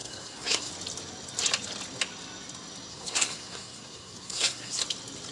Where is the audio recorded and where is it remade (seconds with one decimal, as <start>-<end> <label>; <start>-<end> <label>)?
0.0-0.7 remade; 0.7-2.9 recorded; 2.9-4.8 remade; 4.8-5.3 recorded